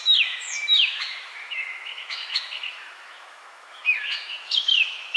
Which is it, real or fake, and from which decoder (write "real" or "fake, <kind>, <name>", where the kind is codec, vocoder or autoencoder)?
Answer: fake, autoencoder, DAC-VAE